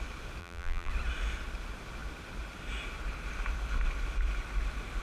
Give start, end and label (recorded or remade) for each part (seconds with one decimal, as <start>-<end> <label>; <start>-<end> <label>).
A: 0.0-0.4 recorded; 0.4-0.9 remade; 0.9-5.0 recorded